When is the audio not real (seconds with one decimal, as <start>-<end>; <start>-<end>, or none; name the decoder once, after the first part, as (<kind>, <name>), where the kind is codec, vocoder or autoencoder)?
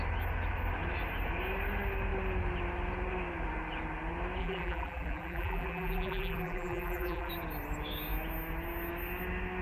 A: 4.4-7.3 (vocoder, BigVGAN v2)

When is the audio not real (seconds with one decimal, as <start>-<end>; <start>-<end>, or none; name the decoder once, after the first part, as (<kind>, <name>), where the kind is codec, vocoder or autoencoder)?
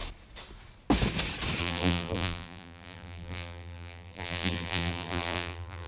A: 1.6-5.9 (vocoder, BigVGAN v2)